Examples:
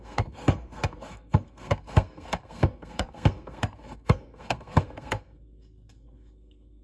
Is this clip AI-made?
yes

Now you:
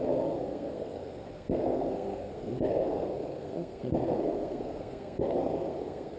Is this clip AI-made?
yes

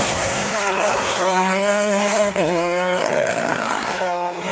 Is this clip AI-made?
yes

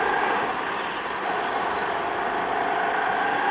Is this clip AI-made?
no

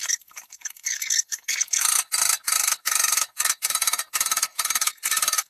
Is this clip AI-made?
yes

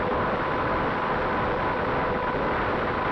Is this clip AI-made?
no